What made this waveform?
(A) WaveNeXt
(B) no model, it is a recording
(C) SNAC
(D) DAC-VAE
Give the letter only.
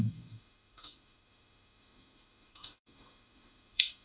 D